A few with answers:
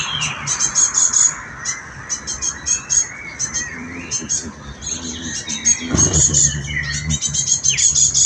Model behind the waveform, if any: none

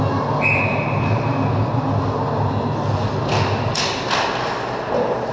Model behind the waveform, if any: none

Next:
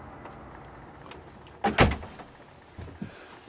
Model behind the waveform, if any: none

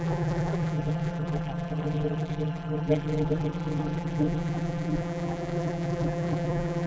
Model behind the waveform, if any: vocoder, BigVGAN v2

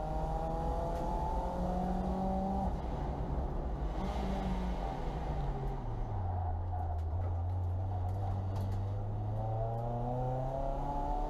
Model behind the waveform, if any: none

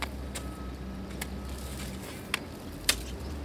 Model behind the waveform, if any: none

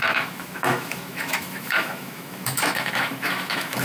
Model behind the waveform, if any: autoencoder, DAC-VAE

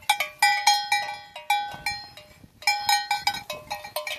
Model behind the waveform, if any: none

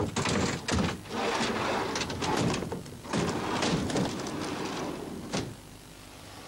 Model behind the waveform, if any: none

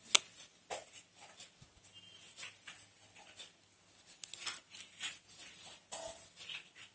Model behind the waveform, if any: none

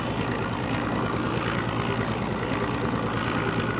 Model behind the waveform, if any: none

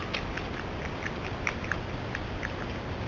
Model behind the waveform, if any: none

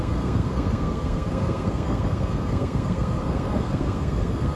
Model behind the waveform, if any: codec, SNAC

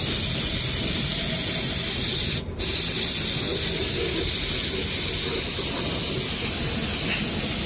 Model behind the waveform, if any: none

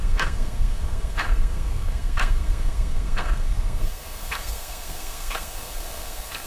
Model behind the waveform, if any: codec, SNAC